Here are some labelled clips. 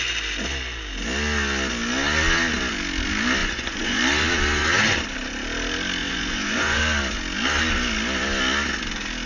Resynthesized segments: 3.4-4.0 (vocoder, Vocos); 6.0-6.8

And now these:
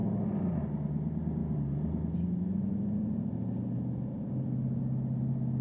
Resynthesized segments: none

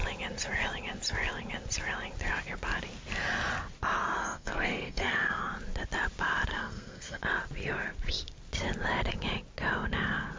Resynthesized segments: 4.2-5.4 (codec, SNAC); 6.5-7.2

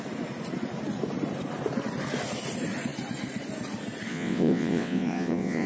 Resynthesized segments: 4.1-5.7 (vocoder, WaveNeXt)

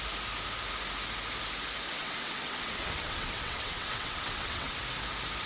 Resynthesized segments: 2.0-4.8 (vocoder, WaveNeXt)